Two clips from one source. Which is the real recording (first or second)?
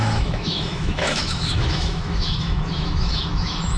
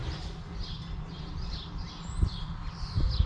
second